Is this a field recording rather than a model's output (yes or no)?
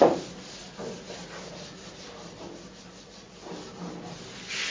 yes